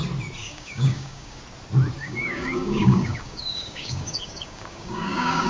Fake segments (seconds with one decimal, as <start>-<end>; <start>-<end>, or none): 0.4-1.4; 2.0-5.5